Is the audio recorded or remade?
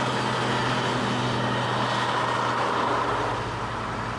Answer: recorded